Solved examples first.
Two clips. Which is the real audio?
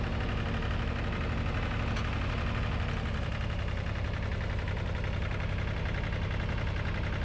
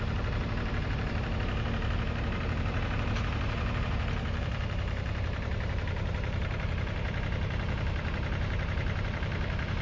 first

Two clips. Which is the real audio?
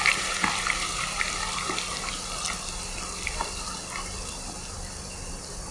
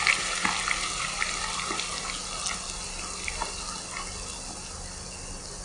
second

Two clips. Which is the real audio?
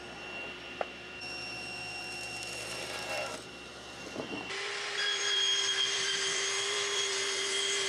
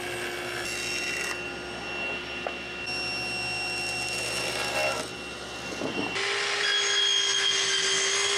second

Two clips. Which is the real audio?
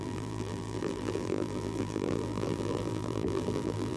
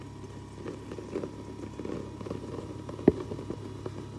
second